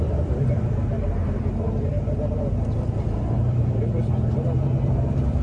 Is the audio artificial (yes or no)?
yes